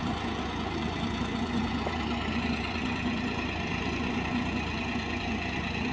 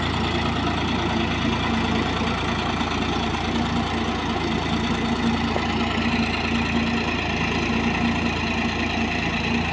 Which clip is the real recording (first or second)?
second